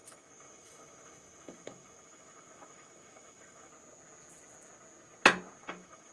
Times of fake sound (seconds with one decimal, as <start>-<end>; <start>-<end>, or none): 0.0-3.7; 5.6-6.1